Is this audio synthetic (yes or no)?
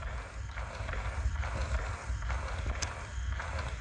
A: no